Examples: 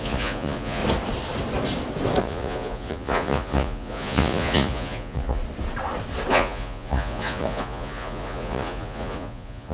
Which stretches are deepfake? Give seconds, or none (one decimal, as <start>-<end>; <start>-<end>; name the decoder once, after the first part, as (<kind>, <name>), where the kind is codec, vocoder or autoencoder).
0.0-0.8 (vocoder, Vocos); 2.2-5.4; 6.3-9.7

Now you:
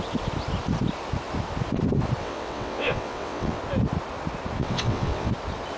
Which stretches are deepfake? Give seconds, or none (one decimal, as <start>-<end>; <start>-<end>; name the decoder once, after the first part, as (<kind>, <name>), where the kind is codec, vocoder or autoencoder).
2.2-3.6 (vocoder, WaveNeXt); 4.6-5.3

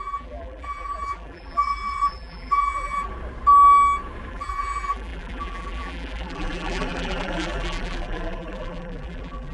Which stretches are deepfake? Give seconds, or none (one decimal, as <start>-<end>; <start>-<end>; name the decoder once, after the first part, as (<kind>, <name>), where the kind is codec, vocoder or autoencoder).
0.0-3.1 (vocoder, BigVGAN v2); 4.3-9.5

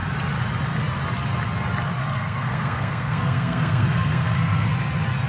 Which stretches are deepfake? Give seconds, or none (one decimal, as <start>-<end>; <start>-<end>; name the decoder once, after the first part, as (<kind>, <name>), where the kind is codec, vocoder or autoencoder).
2.0-4.7 (codec, SNAC)

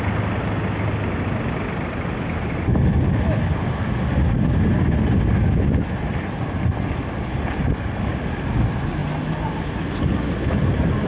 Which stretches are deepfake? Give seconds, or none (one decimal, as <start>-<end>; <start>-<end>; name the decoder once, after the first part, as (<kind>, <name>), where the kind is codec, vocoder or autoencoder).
none

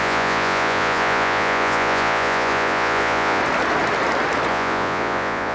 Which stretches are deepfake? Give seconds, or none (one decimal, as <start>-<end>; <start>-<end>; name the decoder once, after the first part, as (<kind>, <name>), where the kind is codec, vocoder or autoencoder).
0.0-3.4 (vocoder, Vocos); 4.5-5.5

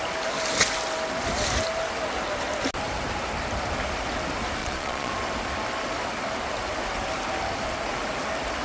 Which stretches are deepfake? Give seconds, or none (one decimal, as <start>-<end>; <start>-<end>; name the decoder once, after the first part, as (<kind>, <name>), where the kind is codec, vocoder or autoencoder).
4.6-5.1 (vocoder, Vocos)